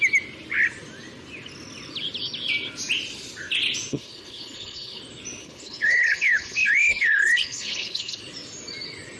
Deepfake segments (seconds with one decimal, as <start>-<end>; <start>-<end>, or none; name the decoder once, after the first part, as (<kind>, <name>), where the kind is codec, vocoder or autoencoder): 3.9-5.0 (codec, HILCodec); 5.4-8.2